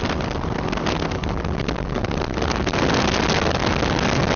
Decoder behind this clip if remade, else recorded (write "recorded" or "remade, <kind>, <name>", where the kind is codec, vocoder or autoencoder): recorded